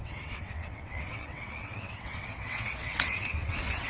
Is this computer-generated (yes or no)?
yes